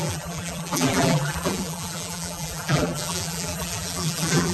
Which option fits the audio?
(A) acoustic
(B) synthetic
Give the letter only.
B